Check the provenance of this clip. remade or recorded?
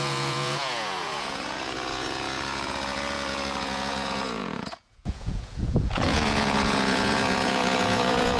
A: remade